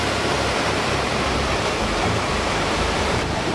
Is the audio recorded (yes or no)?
no